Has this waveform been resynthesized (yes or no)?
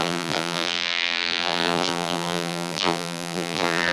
yes